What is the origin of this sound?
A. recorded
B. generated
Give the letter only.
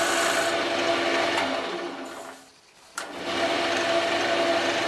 A